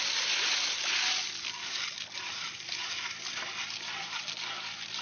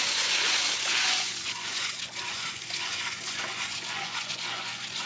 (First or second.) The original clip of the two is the first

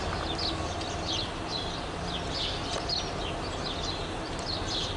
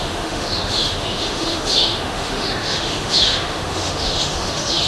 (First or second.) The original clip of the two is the first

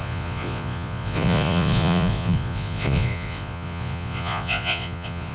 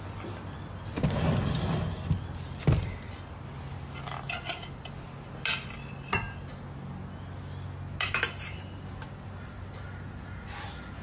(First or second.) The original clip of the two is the second